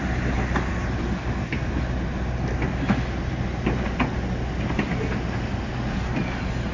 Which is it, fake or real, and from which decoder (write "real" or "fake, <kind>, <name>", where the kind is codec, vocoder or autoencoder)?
real